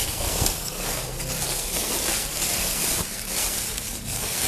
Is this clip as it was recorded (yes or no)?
no